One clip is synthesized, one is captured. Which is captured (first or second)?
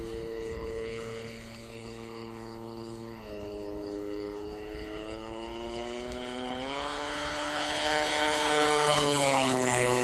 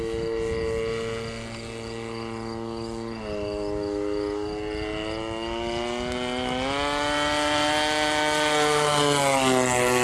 second